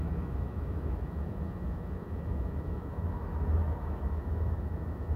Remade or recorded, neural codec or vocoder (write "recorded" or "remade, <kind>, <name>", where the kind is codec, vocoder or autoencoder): remade, autoencoder, DAC-VAE